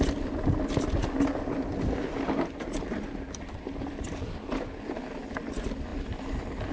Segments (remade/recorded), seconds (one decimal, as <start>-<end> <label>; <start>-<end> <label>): 0.0-6.7 recorded